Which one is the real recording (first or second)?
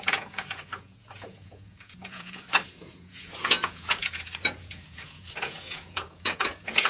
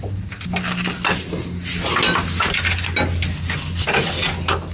second